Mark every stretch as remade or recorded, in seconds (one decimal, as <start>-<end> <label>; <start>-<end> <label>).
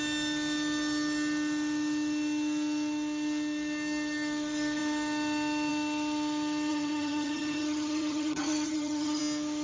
0.0-6.7 recorded; 6.7-9.2 remade; 9.2-9.6 recorded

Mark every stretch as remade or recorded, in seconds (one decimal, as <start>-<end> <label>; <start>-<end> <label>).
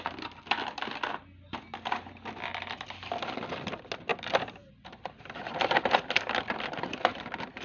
0.0-7.6 recorded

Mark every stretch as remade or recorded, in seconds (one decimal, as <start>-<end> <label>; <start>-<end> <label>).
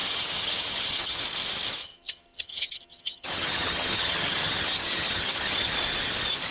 0.0-1.2 remade; 1.2-1.8 recorded; 1.8-5.7 remade; 5.7-6.5 recorded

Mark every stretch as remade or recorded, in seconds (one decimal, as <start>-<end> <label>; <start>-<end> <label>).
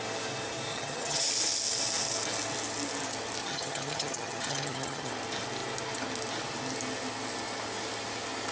0.0-0.7 recorded; 0.7-1.3 remade; 1.3-3.4 recorded; 3.4-5.1 remade; 5.1-8.5 recorded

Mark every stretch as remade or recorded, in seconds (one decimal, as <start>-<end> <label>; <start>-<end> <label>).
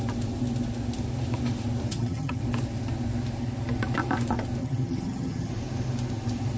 0.0-1.9 recorded; 1.9-2.4 remade; 2.4-4.6 recorded; 4.6-5.5 remade; 5.5-6.6 recorded